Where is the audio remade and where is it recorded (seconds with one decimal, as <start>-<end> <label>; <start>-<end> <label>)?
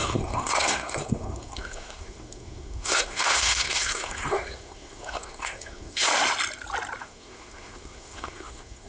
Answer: 0.0-6.1 remade; 6.1-7.0 recorded; 7.0-8.9 remade